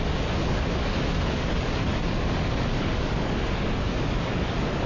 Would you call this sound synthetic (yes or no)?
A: yes